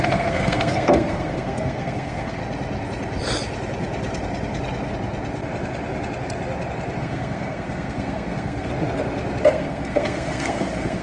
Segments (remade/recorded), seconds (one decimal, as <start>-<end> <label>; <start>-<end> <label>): 0.0-2.4 remade; 2.4-7.0 recorded; 7.0-8.7 remade; 8.7-9.5 recorded; 9.5-11.0 remade